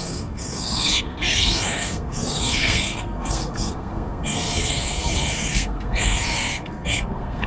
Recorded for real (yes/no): no